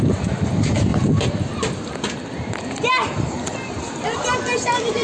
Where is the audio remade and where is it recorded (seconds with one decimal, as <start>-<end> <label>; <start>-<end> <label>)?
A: 0.0-0.9 recorded; 0.9-2.0 remade; 2.0-5.0 recorded